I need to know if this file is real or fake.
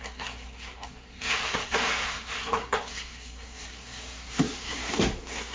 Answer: fake